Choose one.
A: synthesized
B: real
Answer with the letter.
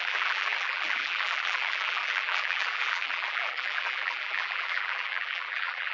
A